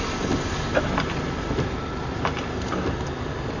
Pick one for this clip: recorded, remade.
recorded